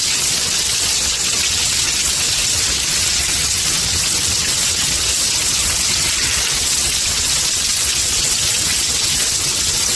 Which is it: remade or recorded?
remade